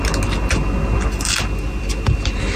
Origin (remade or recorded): recorded